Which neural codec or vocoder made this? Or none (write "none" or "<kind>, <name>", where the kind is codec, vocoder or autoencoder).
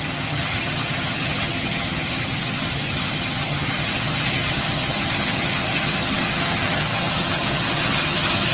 vocoder, HiFi-GAN